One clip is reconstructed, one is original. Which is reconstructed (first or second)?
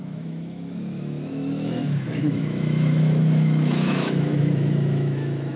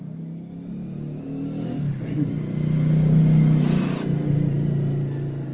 first